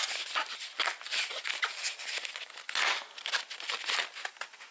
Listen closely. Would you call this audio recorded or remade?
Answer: recorded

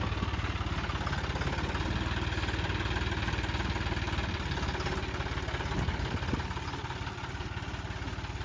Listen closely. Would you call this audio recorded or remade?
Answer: recorded